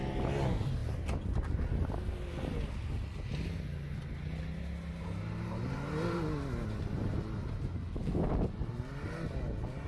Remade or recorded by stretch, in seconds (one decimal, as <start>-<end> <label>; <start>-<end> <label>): 0.0-9.9 recorded